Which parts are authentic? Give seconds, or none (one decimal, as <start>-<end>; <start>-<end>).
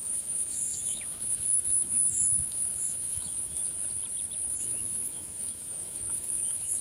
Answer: 3.6-4.6